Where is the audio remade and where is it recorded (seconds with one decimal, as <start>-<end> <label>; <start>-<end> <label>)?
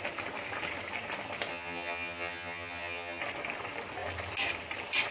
0.0-1.5 recorded; 1.5-3.2 remade; 3.2-5.1 recorded